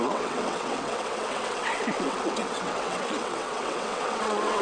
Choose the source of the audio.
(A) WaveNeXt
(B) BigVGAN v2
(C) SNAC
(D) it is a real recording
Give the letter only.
A